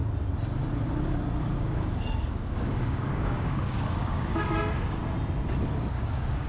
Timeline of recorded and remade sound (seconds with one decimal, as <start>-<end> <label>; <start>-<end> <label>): 0.0-1.4 recorded; 1.4-5.0 remade; 5.0-5.9 recorded; 5.9-6.5 remade